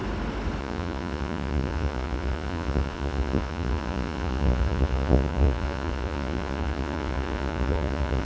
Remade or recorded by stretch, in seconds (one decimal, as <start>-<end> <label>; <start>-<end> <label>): 0.0-0.6 recorded; 0.6-8.2 remade